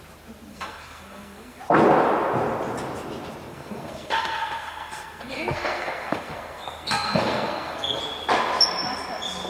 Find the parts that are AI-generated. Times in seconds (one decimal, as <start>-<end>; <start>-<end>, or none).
0.5-1.6; 3.5-8.0